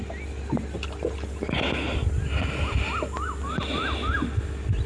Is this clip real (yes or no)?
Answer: yes